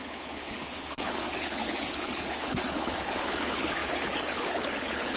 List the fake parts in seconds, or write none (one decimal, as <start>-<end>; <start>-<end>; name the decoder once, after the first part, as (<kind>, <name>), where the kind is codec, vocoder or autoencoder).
0.0-5.2 (codec, HILCodec)